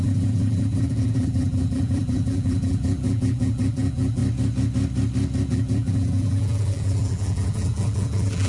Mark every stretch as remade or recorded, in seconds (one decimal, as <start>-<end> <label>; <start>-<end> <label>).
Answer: 0.0-4.2 remade; 4.2-5.5 recorded; 5.5-8.5 remade

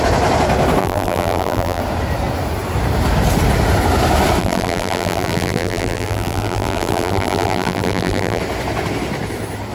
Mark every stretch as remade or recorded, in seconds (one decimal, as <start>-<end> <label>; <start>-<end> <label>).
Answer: 0.0-0.8 recorded; 0.8-1.8 remade; 1.8-4.4 recorded; 4.4-8.4 remade; 8.4-9.7 recorded

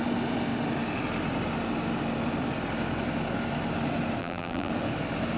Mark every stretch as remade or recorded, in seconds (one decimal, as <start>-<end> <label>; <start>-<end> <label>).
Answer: 0.0-4.2 recorded; 4.2-4.7 remade; 4.7-5.4 recorded

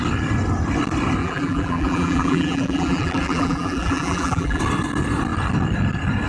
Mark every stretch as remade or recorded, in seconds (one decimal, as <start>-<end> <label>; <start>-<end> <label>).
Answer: 0.0-1.2 recorded; 1.2-4.6 remade; 4.6-6.3 recorded

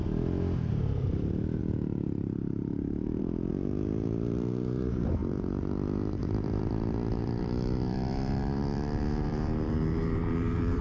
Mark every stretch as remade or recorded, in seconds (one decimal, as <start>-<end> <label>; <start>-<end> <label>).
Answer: 0.0-0.7 recorded; 0.7-10.8 remade

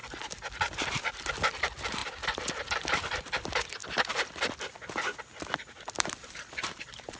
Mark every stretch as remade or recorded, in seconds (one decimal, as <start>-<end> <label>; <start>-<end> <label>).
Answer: 0.0-1.6 recorded; 1.6-2.0 remade; 2.0-2.8 recorded; 2.8-3.8 remade; 3.8-5.2 recorded; 5.2-7.2 remade

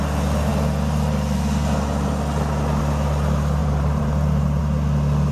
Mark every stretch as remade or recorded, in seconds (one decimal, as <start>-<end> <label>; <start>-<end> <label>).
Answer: 0.0-3.6 recorded; 3.6-4.6 remade; 4.6-5.3 recorded